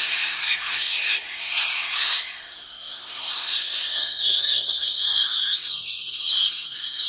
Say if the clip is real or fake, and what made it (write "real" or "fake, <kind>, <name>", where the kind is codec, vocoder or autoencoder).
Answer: fake, codec, SNAC